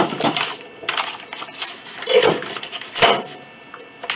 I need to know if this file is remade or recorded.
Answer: recorded